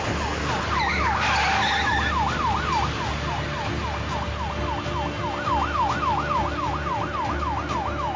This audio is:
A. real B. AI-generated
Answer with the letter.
A